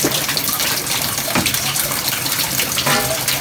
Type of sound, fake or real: fake